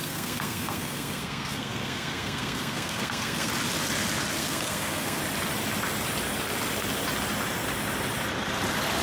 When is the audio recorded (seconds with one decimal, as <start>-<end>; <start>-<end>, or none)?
3.5-4.4; 5.2-9.0

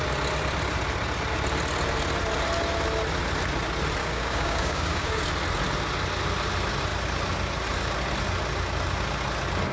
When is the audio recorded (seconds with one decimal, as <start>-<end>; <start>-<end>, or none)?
0.0-4.0; 5.2-9.7